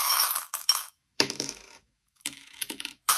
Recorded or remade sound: remade